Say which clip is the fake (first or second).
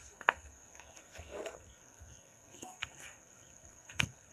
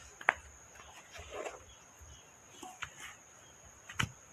first